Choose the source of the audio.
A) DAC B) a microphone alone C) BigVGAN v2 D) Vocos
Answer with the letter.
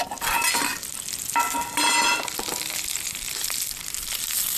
C